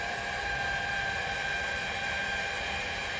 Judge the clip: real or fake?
fake